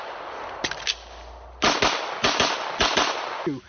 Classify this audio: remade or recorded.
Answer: recorded